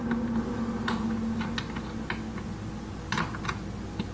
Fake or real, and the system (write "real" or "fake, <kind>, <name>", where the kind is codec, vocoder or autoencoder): real